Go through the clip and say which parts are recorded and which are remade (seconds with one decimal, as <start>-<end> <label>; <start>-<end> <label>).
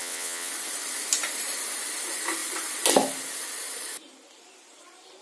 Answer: 0.0-0.5 remade; 0.5-5.2 recorded